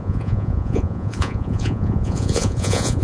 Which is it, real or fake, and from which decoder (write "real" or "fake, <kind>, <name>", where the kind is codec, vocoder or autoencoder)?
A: fake, vocoder, Vocos